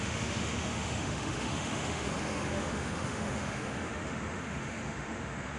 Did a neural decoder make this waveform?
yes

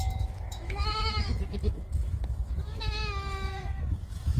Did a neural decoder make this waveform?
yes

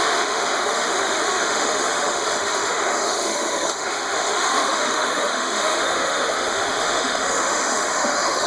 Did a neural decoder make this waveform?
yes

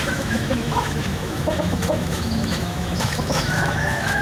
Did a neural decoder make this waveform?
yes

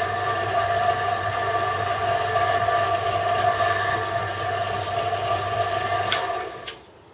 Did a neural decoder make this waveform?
no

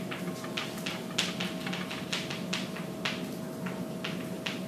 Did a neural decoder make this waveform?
no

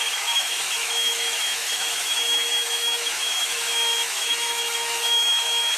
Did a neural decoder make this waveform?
yes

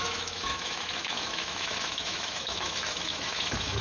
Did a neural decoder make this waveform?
yes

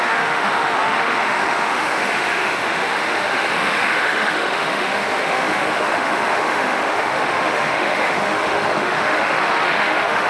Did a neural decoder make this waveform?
yes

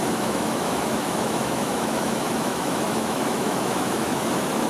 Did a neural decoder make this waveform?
yes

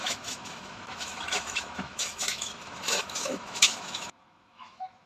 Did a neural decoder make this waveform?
yes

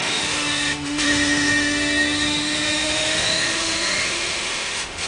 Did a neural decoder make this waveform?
yes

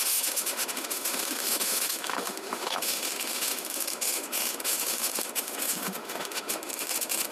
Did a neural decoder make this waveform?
yes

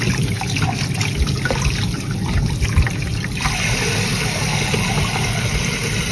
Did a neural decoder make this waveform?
no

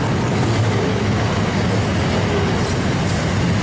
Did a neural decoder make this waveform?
no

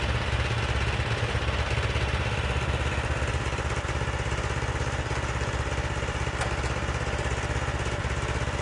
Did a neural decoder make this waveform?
no